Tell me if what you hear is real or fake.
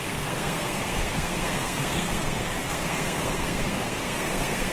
fake